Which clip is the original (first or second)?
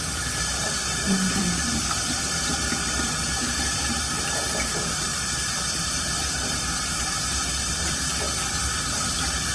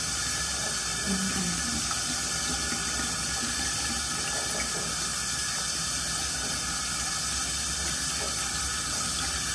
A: second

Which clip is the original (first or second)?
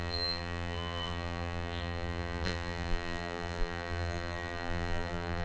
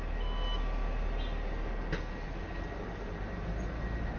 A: second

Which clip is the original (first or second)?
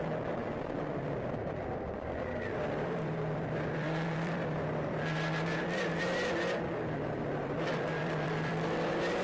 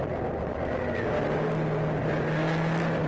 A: second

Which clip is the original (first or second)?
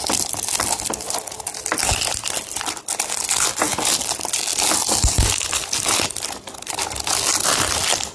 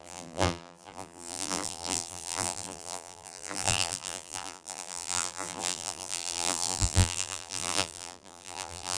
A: first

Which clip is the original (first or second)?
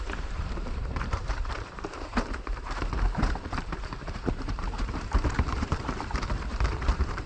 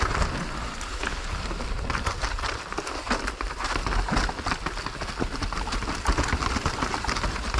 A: second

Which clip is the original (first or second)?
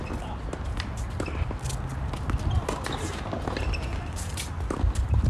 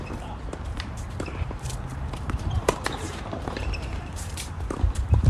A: first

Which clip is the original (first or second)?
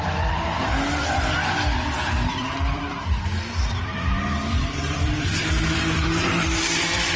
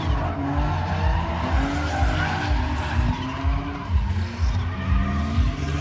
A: second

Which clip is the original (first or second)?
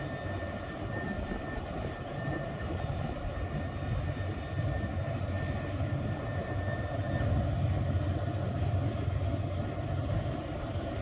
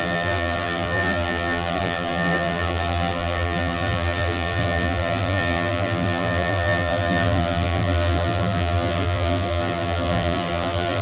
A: first